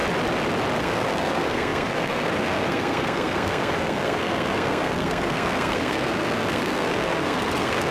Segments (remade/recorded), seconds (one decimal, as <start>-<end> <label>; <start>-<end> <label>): 0.0-0.8 recorded; 0.8-7.9 remade